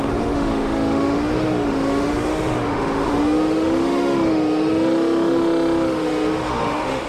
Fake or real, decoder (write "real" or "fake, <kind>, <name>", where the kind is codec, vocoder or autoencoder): fake, autoencoder, DAC-VAE